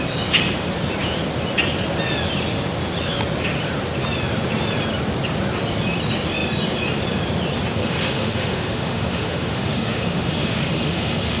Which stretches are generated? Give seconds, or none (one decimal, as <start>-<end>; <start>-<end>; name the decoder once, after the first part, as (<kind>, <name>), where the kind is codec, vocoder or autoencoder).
7.8-11.4 (autoencoder, DAC-VAE)